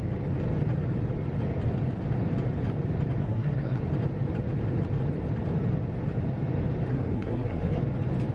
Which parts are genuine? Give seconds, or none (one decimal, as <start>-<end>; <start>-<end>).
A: 0.0-3.2; 3.8-6.9; 7.8-8.3